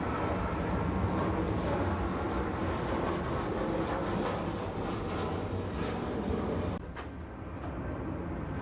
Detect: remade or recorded recorded